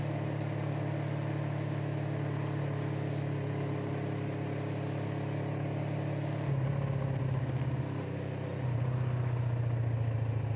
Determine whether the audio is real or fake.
real